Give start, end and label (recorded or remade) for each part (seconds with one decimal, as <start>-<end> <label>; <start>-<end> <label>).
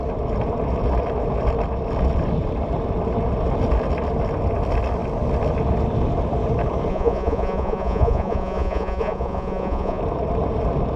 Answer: 0.0-6.9 recorded; 6.9-10.0 remade; 10.0-11.0 recorded